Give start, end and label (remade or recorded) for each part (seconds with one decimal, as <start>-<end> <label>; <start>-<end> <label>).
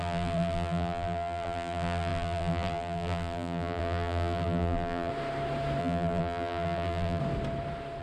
0.0-5.1 remade; 5.1-5.8 recorded; 5.8-7.2 remade; 7.2-8.0 recorded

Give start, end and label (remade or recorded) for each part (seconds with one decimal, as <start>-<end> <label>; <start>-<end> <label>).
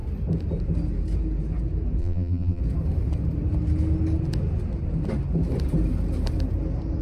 0.0-2.0 recorded; 2.0-2.6 remade; 2.6-7.0 recorded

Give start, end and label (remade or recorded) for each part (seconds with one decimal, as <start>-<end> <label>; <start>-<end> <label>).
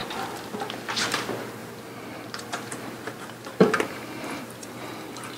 0.0-1.6 recorded; 1.6-4.8 remade; 4.8-5.4 recorded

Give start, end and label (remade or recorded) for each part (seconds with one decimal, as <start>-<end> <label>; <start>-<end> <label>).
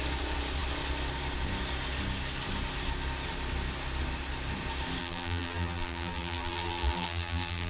0.0-5.0 recorded; 5.0-7.7 remade